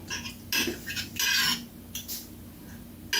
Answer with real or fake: real